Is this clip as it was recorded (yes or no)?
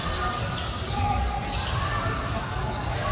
yes